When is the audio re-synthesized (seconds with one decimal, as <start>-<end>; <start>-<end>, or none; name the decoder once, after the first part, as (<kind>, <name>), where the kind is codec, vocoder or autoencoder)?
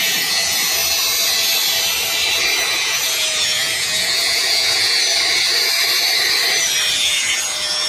0.0-0.8 (vocoder, Vocos); 2.7-5.0; 6.9-7.9